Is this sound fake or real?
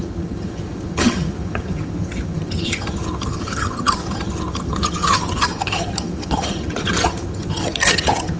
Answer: fake